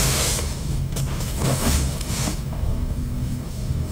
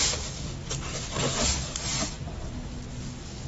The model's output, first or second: first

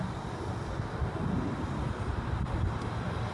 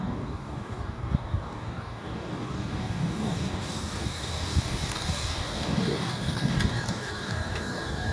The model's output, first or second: second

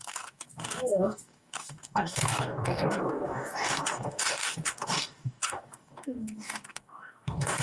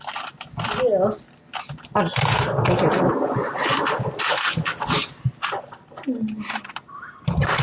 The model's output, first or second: first